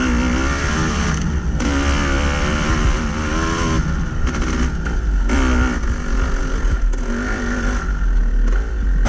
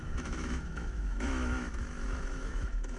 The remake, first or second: second